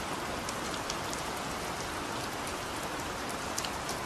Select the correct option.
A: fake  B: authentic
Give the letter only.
B